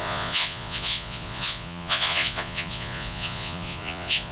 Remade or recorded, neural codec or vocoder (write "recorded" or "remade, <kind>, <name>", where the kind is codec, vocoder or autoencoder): remade, vocoder, Vocos